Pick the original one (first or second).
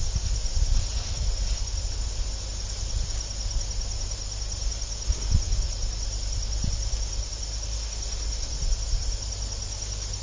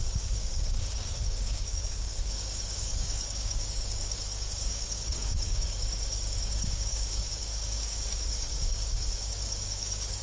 first